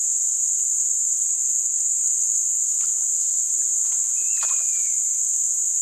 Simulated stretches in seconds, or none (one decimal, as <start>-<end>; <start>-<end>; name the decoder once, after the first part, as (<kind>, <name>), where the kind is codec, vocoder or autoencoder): 1.3-2.6 (codec, SNAC)